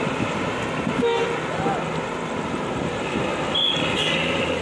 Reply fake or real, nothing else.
real